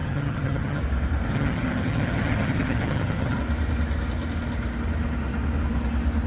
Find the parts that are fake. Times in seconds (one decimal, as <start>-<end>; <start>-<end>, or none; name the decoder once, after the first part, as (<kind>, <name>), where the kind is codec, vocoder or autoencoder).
0.0-0.8 (vocoder, HiFi-GAN); 1.3-3.4